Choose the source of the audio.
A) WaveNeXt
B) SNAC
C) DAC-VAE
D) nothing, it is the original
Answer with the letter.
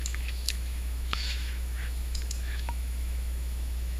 C